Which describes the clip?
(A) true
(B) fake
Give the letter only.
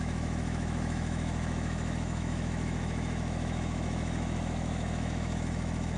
B